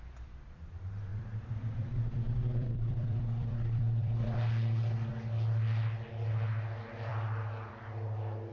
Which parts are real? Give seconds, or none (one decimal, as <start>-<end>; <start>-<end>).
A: 0.0-1.1; 4.5-8.5